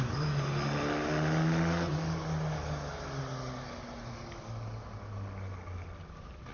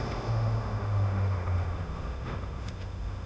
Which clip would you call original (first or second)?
first